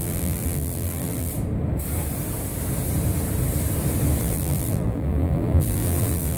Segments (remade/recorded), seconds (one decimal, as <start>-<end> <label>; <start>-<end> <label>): 0.0-1.3 remade; 1.3-4.2 recorded; 4.2-6.4 remade